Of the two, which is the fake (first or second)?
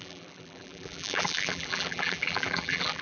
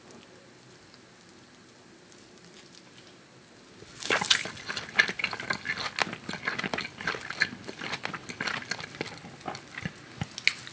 first